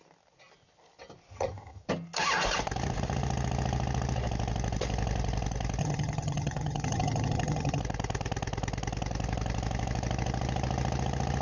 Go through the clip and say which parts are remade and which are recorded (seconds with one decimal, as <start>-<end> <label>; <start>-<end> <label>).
0.0-1.3 recorded; 1.3-1.9 remade; 1.9-5.8 recorded; 5.8-7.8 remade; 7.8-11.4 recorded